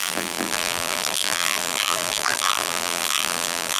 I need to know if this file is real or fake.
fake